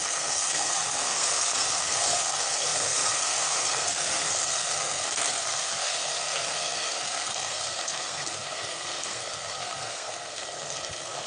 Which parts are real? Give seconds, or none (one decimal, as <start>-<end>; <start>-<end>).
none